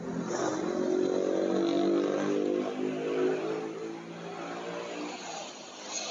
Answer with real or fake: real